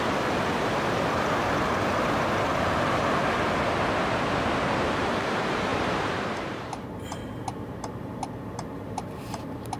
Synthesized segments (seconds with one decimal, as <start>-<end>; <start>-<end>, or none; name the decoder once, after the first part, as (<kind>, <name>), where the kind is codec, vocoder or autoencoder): 0.0-2.5 (vocoder, BigVGAN v2); 4.3-9.8